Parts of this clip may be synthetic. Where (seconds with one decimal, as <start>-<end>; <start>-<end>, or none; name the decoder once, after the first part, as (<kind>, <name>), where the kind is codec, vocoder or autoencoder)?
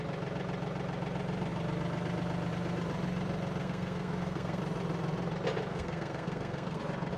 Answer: 3.6-4.6 (codec, SNAC); 5.7-6.8